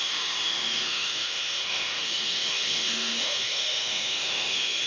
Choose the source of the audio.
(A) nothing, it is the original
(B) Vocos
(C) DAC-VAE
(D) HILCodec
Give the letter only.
C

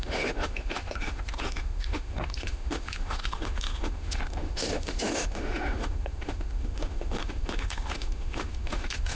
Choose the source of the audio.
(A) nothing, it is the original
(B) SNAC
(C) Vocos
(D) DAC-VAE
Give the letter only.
D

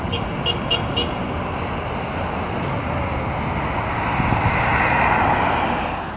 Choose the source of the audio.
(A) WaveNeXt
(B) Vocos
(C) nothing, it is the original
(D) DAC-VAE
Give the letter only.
C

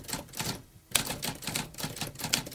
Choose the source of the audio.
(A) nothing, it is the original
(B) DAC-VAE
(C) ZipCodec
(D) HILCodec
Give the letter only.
A